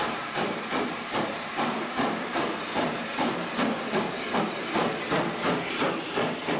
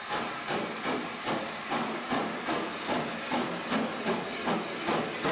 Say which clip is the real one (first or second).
second